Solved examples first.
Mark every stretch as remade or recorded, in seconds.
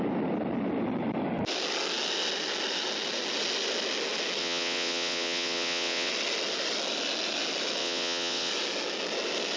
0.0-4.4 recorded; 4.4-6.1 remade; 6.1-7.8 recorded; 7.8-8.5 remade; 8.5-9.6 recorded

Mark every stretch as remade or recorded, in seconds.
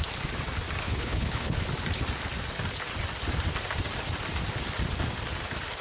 0.0-0.8 recorded; 0.8-1.6 remade; 1.6-5.8 recorded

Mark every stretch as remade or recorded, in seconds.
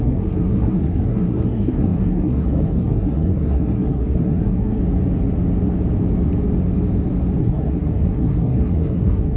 0.0-4.8 remade; 4.8-7.4 recorded; 7.4-9.4 remade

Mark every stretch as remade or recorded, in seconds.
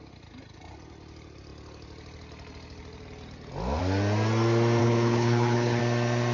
0.0-4.8 recorded; 4.8-5.8 remade; 5.8-6.3 recorded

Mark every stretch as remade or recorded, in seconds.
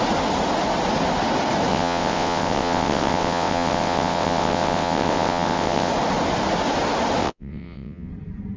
0.0-1.7 recorded; 1.7-5.9 remade; 5.9-7.2 recorded; 7.2-8.1 remade; 8.1-8.6 recorded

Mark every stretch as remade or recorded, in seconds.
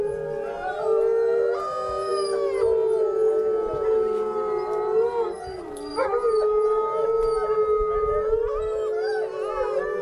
0.0-10.0 recorded